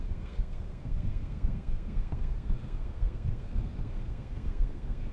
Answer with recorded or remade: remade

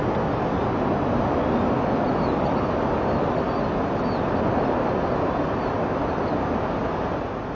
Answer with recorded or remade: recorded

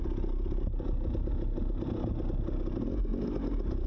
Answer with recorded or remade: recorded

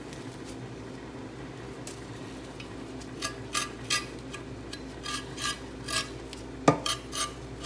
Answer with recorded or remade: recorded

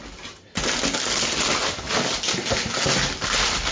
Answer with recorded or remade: recorded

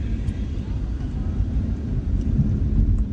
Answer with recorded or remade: remade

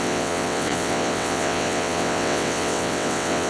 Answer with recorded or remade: remade